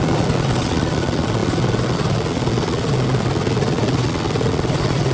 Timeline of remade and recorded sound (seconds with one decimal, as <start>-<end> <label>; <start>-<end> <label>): 0.0-5.1 remade